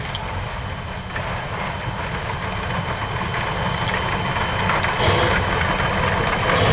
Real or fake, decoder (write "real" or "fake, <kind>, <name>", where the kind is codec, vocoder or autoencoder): real